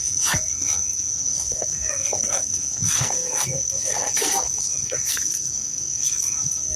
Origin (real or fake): fake